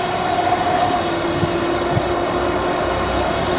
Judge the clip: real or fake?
real